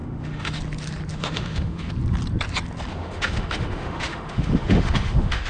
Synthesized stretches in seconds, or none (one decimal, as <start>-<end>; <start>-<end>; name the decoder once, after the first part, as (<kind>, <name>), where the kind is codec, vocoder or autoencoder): 0.0-0.6 (autoencoder, DAC-VAE); 1.1-1.9; 2.9-5.5